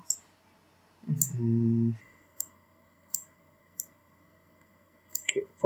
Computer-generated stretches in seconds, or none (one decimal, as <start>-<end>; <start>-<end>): 2.0-5.7